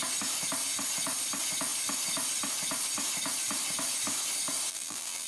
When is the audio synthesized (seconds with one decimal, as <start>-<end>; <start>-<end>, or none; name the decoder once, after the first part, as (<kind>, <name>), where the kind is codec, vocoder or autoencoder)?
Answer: 4.7-5.3 (vocoder, BigVGAN v2)